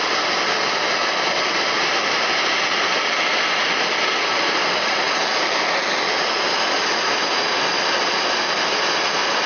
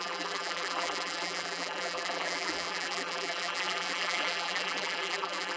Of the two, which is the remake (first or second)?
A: second